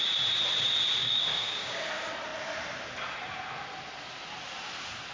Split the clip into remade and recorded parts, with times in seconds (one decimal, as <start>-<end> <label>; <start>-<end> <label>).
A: 0.0-1.0 recorded; 1.0-1.8 remade; 1.8-5.1 recorded